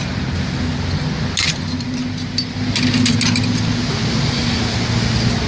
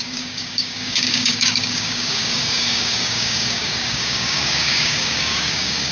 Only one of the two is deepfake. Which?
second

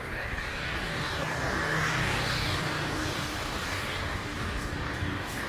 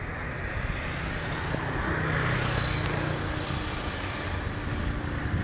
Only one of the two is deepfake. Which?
first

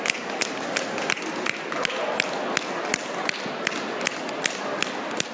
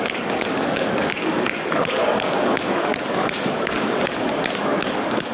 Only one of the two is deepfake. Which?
second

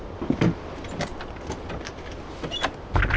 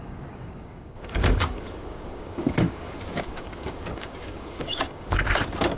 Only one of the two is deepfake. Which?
second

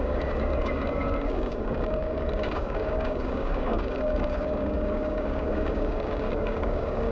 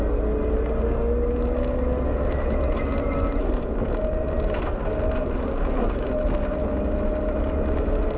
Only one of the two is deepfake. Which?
first